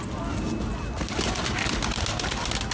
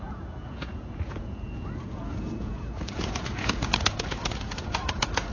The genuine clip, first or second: first